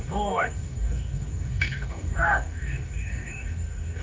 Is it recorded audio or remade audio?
remade